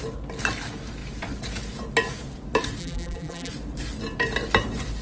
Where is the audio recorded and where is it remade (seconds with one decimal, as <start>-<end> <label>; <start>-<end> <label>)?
0.0-2.8 recorded; 2.8-3.5 remade; 3.5-5.0 recorded